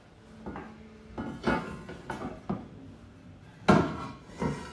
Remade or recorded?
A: recorded